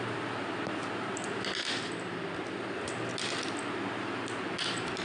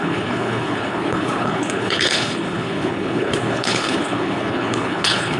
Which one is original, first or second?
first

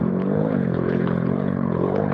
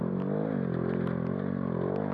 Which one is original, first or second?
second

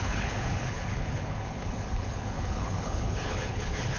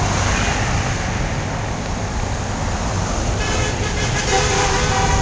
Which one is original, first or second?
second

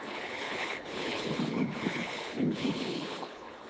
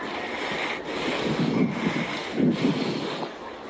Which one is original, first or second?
second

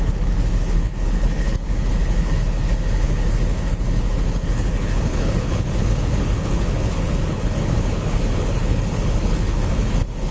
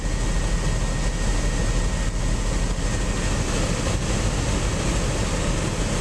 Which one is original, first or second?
second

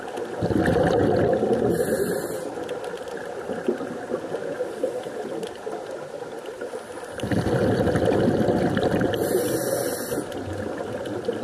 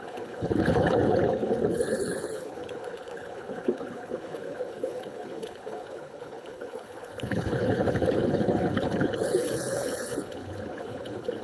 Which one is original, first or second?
first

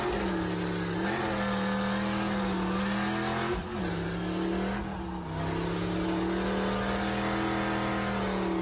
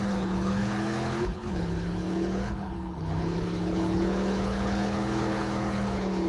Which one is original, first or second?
first